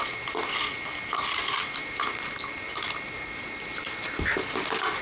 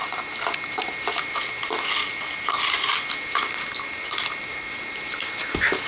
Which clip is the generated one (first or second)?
first